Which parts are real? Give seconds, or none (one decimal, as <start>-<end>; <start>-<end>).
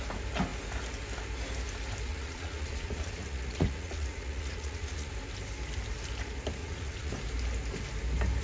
0.0-2.1; 5.1-6.6; 7.1-8.4